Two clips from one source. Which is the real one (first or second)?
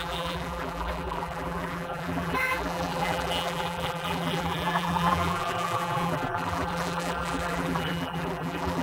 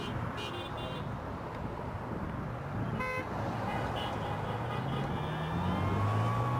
second